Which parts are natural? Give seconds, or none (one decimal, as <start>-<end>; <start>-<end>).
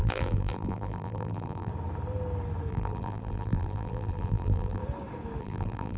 1.7-2.7; 4.8-5.4